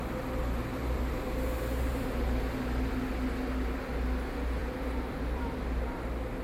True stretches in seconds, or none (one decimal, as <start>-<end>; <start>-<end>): 0.0-0.7; 2.9-4.6; 6.0-6.4